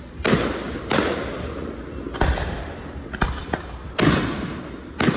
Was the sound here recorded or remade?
recorded